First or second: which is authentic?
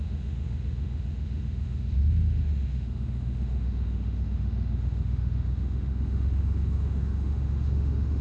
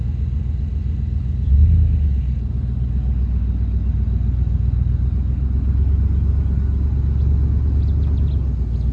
second